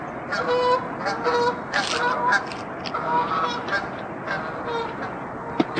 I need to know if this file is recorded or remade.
recorded